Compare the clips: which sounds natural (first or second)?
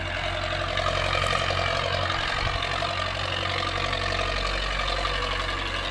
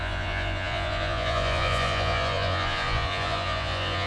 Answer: first